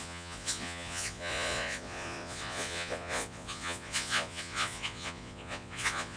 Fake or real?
fake